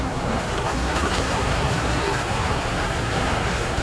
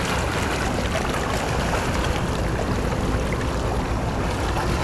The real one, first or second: second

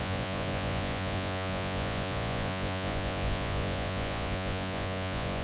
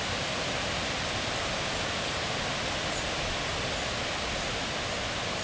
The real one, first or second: second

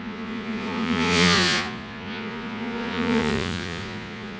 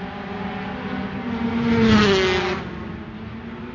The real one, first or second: second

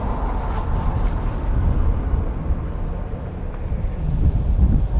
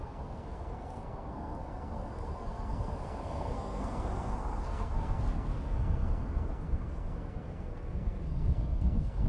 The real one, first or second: first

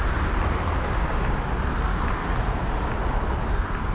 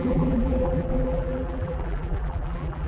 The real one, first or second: first